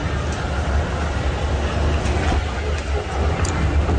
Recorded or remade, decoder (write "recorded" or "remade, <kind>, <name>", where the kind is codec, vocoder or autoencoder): recorded